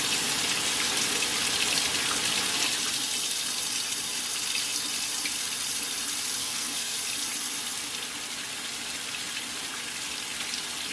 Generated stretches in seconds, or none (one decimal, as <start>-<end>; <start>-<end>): 6.4-7.0